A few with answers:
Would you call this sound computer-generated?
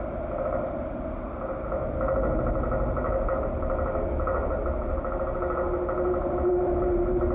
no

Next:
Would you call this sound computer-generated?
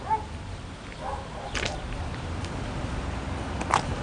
no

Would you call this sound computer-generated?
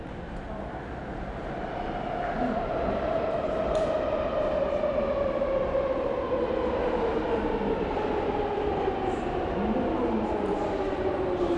no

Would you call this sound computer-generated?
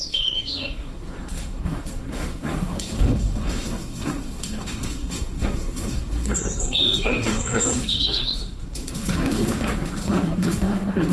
yes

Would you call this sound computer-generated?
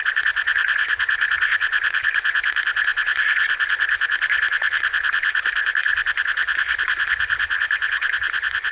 yes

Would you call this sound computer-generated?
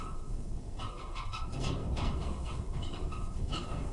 yes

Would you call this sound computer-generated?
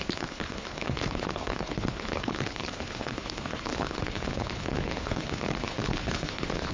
yes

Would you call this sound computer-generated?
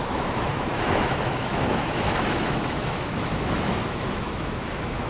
yes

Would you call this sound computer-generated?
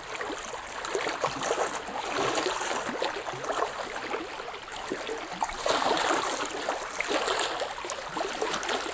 no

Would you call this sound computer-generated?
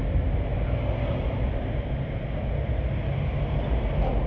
no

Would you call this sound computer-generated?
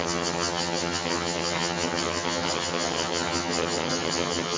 yes